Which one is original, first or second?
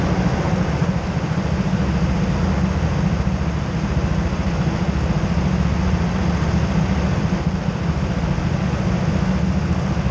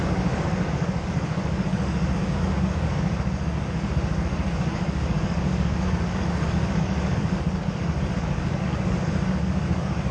first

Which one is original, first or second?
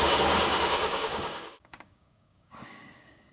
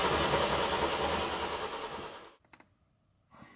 second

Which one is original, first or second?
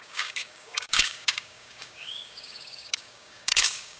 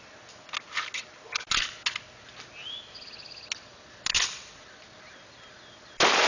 second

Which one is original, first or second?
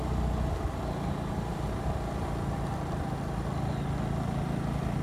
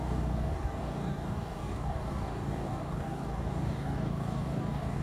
first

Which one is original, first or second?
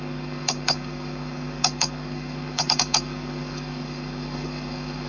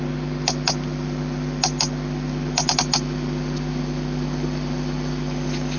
second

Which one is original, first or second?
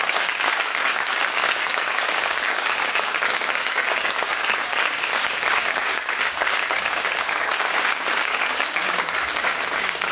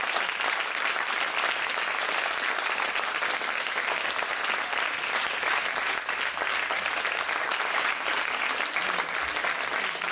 second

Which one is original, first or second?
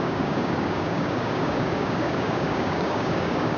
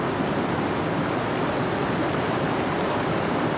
second